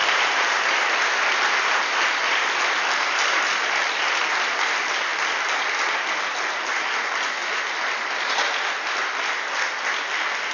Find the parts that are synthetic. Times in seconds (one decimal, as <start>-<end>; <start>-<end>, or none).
none